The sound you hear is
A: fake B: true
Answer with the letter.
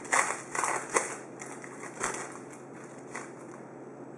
B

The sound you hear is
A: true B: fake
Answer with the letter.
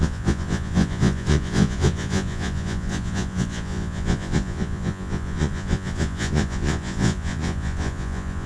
B